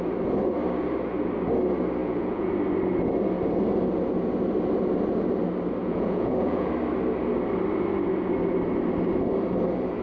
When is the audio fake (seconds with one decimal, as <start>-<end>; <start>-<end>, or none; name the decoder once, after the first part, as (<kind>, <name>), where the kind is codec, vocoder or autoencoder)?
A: 2.0-2.5 (vocoder, Vocos); 5.8-6.7